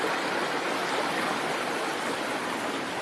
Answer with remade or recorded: recorded